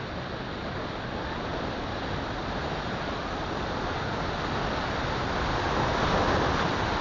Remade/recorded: recorded